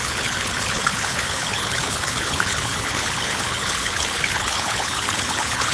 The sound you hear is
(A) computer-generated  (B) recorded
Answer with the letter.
A